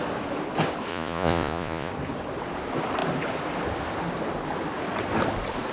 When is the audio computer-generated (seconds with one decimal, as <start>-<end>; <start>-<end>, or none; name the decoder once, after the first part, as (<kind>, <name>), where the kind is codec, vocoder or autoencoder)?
0.9-1.9 (vocoder, Vocos)